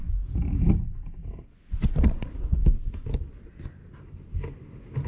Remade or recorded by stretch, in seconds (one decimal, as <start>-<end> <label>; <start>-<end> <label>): 0.0-0.7 remade; 0.7-5.1 recorded